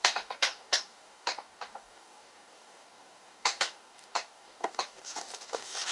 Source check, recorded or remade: remade